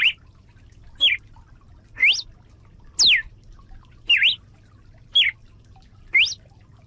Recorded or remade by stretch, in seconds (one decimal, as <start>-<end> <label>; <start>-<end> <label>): 0.0-6.9 recorded